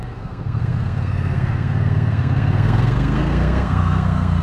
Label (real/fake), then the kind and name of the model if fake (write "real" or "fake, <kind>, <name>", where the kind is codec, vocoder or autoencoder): fake, codec, SNAC